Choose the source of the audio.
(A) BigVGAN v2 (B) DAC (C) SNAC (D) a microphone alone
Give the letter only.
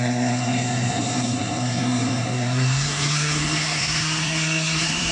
C